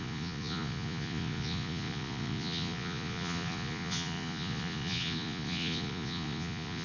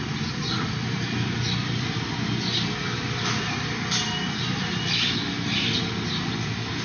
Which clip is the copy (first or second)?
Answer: first